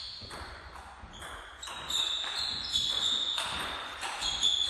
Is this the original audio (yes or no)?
no